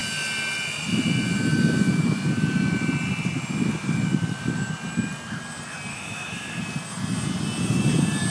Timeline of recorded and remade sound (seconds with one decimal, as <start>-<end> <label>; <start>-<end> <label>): 0.0-5.9 recorded; 5.9-6.6 remade; 6.6-8.3 recorded